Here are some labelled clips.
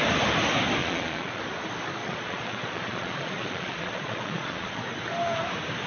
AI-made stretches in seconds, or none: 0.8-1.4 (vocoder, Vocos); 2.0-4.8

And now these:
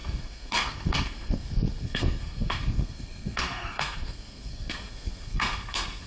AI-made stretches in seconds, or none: 0.0-6.1 (codec, SNAC)

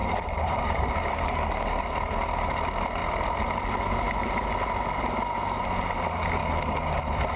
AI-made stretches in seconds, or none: 0.0-1.8 (codec, DAC); 6.4-7.0

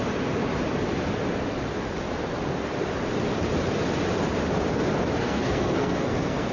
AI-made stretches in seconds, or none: 5.2-6.5 (codec, SNAC)